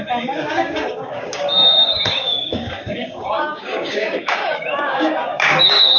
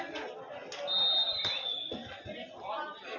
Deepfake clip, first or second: first